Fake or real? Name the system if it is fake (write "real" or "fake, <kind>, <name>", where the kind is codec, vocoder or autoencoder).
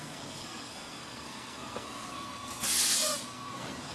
fake, codec, SNAC